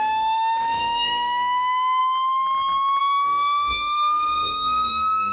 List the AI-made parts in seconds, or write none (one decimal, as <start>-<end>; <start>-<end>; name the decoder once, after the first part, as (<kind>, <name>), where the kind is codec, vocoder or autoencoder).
0.0-2.0 (autoencoder, DAC-VAE); 3.0-5.3